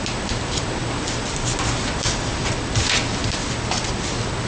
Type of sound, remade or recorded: recorded